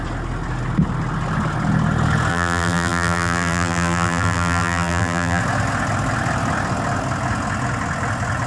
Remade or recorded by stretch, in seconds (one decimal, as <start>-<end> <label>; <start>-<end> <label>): 0.0-2.3 recorded; 2.3-5.4 remade; 5.4-8.5 recorded